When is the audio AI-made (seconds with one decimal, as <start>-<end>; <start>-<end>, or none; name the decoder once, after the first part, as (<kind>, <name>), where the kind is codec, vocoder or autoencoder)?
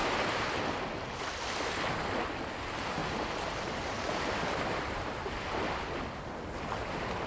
3.0-5.7 (vocoder, BigVGAN v2)